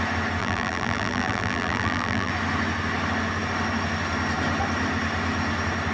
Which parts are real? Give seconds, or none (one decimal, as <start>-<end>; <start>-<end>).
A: 0.0-0.4; 2.3-5.9